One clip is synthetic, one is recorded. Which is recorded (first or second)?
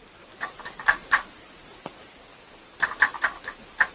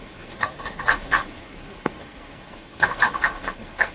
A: first